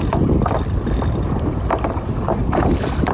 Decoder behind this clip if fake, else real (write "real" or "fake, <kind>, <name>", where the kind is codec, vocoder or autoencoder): real